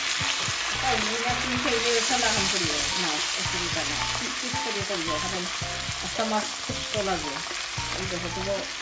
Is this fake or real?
real